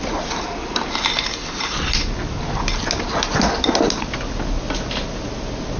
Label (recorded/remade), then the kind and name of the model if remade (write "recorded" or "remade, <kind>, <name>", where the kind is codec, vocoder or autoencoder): recorded